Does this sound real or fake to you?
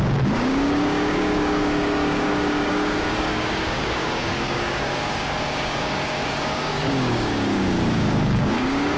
fake